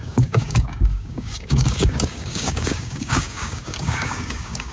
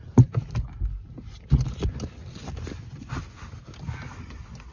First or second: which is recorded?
second